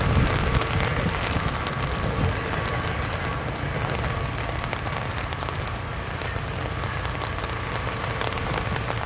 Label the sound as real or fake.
real